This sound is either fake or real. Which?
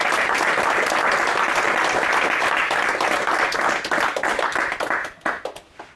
real